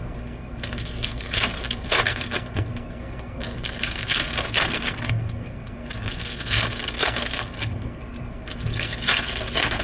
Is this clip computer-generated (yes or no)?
yes